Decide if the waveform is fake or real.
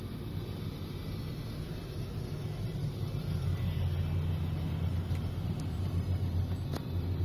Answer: real